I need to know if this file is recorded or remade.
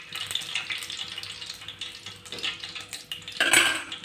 recorded